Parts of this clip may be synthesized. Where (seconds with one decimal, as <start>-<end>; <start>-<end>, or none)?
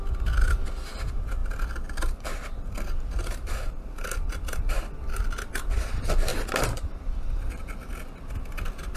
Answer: none